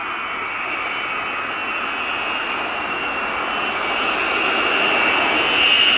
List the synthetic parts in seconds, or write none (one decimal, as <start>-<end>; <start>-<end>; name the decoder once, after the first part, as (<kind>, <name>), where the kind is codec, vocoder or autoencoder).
none